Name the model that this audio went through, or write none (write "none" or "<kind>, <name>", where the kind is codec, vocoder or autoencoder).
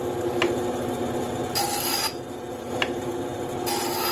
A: none